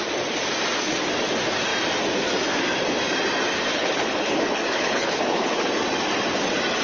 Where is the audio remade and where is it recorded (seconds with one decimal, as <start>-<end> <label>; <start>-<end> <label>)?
0.0-3.7 recorded; 3.7-5.7 remade; 5.7-6.8 recorded